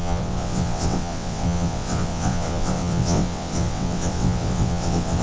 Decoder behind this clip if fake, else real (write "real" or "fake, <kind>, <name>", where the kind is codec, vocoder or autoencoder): fake, vocoder, WaveNeXt